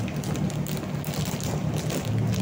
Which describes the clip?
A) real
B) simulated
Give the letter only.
A